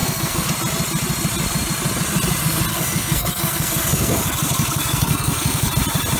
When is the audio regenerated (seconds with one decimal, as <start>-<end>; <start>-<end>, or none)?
0.0-0.5; 2.7-5.7